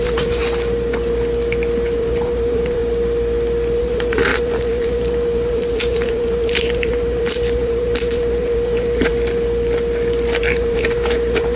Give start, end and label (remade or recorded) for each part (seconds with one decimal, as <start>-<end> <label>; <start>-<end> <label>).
0.0-0.4 remade; 0.4-2.0 recorded; 2.0-2.8 remade; 2.8-3.8 recorded; 3.8-9.1 remade; 9.1-10.4 recorded; 10.4-11.6 remade